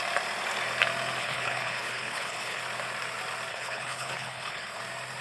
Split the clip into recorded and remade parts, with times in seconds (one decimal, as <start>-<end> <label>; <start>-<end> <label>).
0.0-1.2 recorded; 1.2-2.6 remade; 2.6-3.5 recorded; 3.5-4.8 remade; 4.8-5.2 recorded